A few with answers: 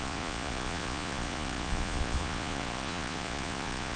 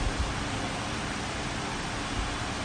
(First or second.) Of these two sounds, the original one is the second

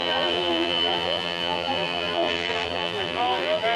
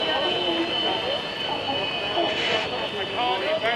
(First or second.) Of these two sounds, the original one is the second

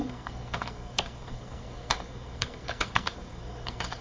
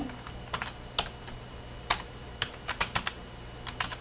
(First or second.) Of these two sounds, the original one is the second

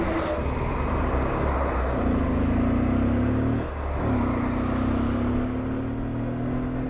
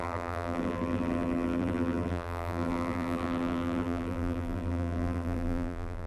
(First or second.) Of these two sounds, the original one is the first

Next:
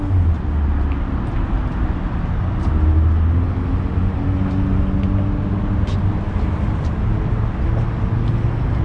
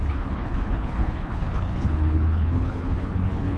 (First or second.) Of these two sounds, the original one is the first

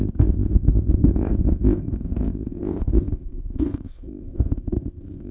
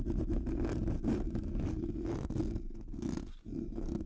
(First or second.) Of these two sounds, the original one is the second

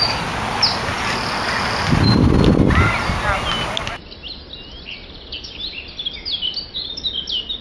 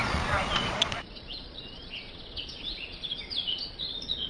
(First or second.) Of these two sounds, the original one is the first